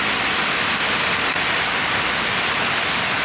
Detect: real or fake real